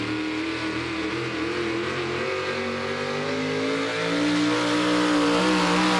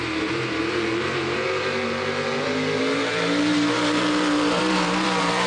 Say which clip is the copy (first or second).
second